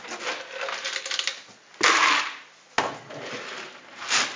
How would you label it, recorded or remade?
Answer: recorded